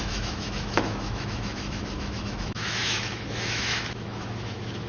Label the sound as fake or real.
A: fake